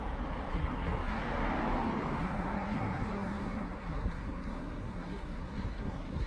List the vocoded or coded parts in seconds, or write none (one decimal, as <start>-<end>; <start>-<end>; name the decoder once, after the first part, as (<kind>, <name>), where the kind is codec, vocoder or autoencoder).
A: 0.5-1.2 (codec, SNAC); 2.2-6.3